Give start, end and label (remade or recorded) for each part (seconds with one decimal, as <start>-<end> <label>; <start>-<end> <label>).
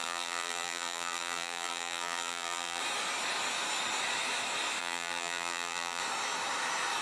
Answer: 0.0-2.8 remade; 2.8-4.8 recorded; 4.8-6.0 remade; 6.0-7.0 recorded